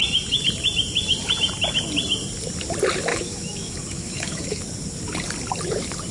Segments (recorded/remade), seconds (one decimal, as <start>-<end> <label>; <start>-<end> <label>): 0.0-3.1 recorded; 3.1-4.6 remade; 4.6-6.1 recorded